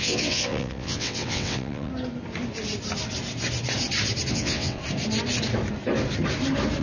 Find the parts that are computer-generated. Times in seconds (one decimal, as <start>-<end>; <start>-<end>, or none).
0.0-1.9; 4.3-4.8